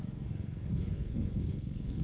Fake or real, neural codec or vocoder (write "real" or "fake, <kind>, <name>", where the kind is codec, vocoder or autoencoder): fake, codec, SNAC